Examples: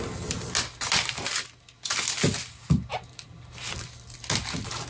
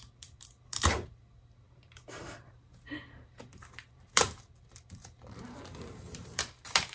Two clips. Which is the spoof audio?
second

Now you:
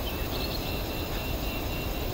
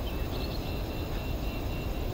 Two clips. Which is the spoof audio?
first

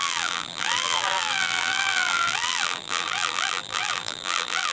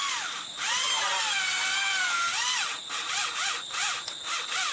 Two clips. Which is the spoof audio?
first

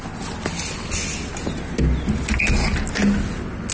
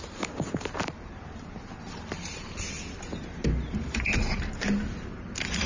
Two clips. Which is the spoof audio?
second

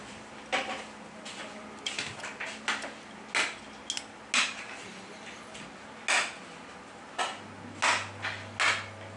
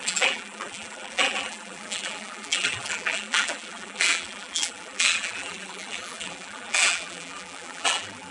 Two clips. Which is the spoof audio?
second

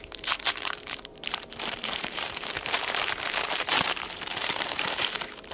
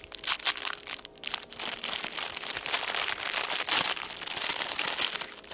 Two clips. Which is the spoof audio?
first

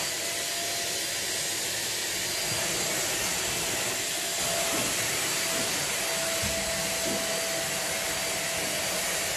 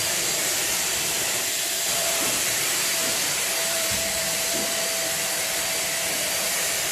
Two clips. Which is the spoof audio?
second